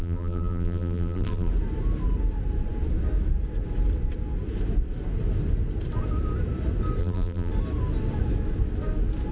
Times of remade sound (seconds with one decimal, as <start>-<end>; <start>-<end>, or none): 0.0-1.5; 7.0-7.5

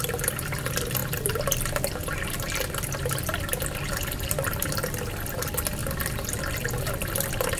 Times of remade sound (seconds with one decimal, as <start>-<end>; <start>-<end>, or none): 0.0-1.0; 3.9-7.6

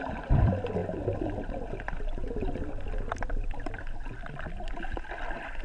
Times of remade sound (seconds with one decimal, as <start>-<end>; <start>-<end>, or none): none

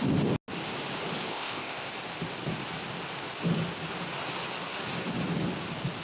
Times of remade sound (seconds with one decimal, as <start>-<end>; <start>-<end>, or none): 1.3-1.9

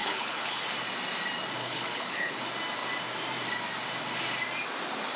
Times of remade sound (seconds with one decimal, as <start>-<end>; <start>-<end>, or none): 0.0-0.6; 1.6-2.4

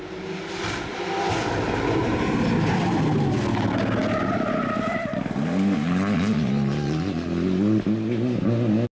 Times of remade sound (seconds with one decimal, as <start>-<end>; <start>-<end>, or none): none

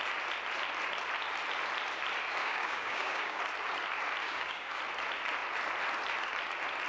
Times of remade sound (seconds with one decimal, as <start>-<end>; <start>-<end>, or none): 2.4-3.4; 4.2-4.8